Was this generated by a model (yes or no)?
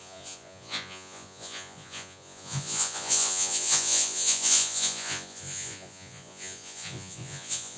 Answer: yes